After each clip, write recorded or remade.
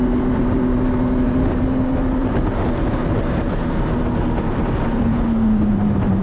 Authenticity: remade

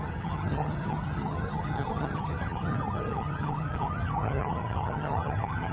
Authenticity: remade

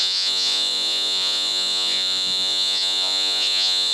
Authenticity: remade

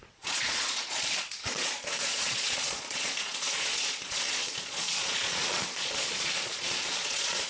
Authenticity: remade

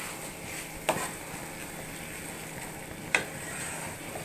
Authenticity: recorded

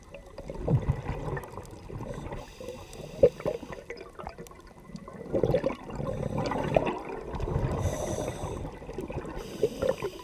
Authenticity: recorded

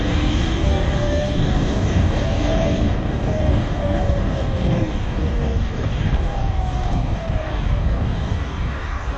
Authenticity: remade